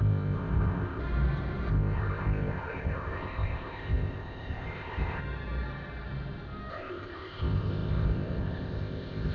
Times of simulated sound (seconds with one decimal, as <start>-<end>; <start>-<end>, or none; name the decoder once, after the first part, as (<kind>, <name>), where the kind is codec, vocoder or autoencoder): 0.0-1.0 (codec, ZipCodec); 1.7-5.2; 6.7-9.3